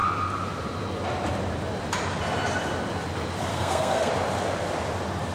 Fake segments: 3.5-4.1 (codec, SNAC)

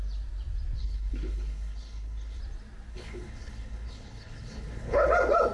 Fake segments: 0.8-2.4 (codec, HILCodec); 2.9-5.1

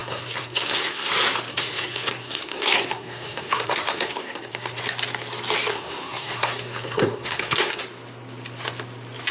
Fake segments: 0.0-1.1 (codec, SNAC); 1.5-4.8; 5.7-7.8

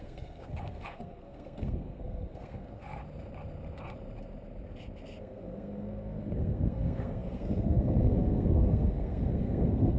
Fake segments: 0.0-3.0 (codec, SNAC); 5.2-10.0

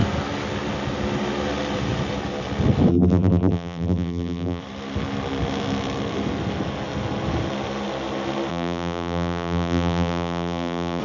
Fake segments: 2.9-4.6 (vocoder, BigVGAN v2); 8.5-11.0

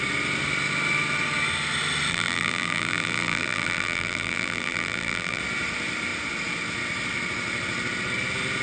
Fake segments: 2.1-5.4 (vocoder, BigVGAN v2)